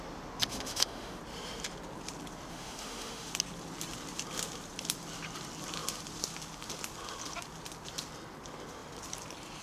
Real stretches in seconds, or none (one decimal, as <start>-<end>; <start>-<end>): 0.0-0.5; 1.2-2.5; 3.3-9.6